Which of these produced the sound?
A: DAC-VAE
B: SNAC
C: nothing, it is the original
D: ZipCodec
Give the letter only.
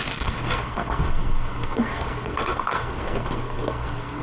B